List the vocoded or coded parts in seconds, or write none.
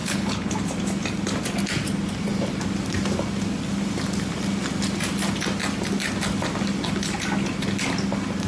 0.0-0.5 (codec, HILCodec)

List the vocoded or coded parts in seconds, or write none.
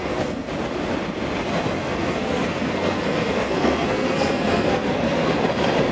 0.0-0.5 (codec, SNAC); 1.8-5.3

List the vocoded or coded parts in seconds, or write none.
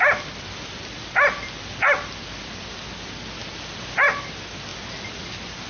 none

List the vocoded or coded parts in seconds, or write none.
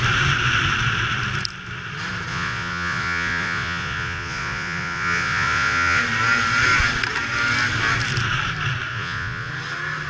2.3-6.0 (vocoder, Vocos); 8.9-9.5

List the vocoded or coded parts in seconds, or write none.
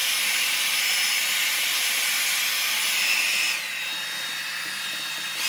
none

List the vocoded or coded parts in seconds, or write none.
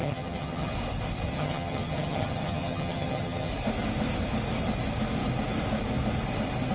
0.0-0.7 (vocoder, HiFi-GAN); 1.3-3.5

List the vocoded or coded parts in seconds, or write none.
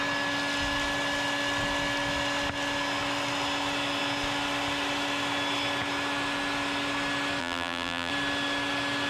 7.4-8.1 (vocoder, BigVGAN v2)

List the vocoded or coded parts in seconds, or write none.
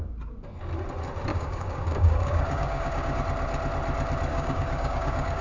1.3-3.2 (codec, DAC); 4.3-5.4